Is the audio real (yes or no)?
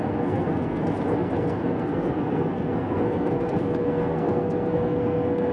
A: no